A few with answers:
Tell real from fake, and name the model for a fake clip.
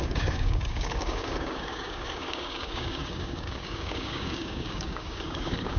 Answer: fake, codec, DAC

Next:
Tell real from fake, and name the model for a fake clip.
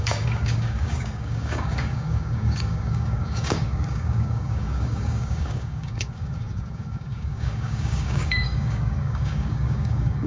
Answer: fake, codec, DAC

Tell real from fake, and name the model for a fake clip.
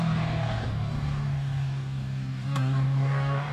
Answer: fake, codec, DAC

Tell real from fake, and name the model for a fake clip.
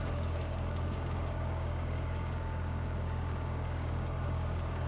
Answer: fake, codec, DAC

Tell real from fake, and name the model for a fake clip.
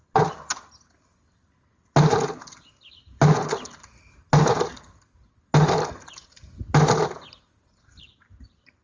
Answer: real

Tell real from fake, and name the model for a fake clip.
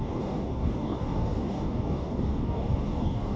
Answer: fake, codec, DAC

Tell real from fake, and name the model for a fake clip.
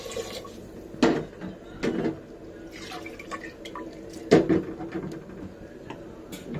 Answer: real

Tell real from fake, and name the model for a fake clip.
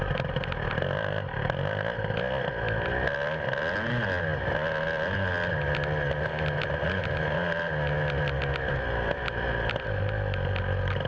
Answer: real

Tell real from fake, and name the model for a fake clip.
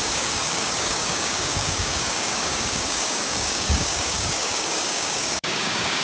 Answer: fake, codec, DAC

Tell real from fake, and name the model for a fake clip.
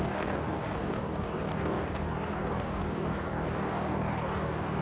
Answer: fake, codec, DAC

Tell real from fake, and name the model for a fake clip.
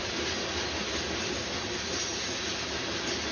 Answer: real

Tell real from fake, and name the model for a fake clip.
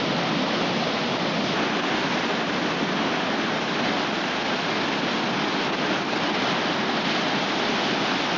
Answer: real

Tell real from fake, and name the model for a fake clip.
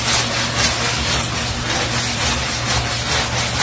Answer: real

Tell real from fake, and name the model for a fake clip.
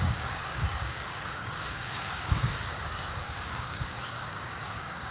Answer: fake, codec, DAC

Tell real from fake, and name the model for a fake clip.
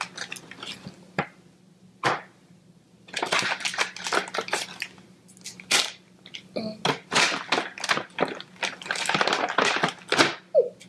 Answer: real